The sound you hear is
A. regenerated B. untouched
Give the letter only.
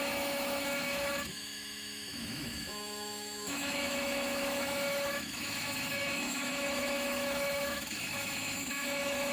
A